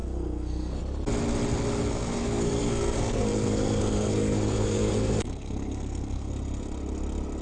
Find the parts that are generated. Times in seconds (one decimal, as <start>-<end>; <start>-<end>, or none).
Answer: 0.0-0.8; 1.9-6.3